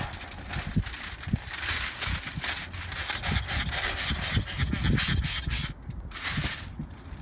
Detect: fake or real real